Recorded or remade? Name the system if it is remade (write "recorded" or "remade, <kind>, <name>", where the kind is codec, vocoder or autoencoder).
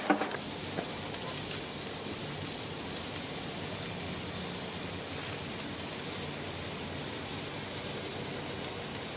recorded